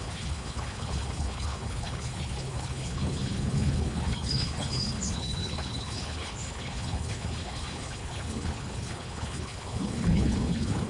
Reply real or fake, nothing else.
fake